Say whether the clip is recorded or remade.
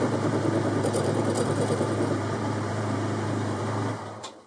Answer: remade